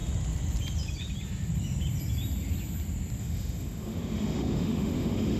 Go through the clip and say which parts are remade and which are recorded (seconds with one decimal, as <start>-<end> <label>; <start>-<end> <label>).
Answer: 0.0-3.2 recorded; 3.2-5.4 remade